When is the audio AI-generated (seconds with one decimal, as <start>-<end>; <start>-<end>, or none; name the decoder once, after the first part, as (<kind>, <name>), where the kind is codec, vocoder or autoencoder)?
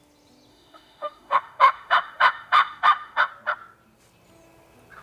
0.5-3.3 (autoencoder, DAC-VAE)